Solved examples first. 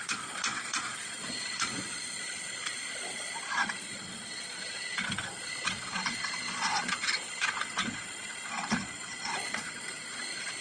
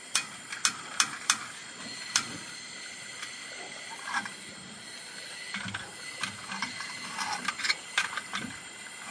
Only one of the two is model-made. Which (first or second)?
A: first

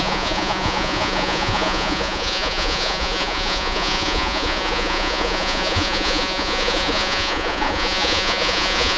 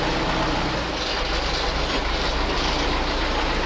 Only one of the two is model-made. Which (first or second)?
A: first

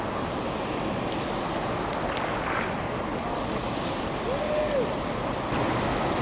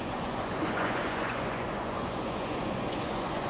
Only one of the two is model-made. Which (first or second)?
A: second